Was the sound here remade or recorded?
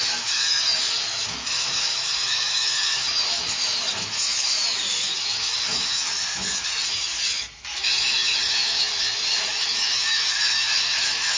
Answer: remade